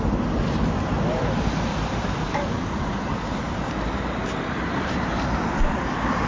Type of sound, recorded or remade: remade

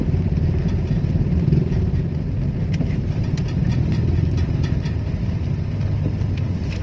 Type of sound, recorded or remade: remade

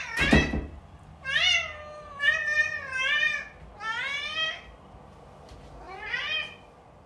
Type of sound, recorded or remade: recorded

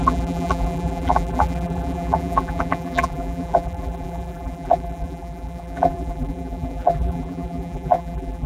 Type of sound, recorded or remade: remade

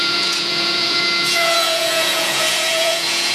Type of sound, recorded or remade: remade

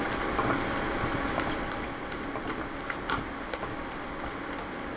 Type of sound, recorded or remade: recorded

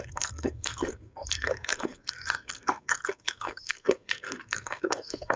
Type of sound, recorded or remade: remade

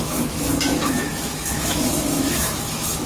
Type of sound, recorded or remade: remade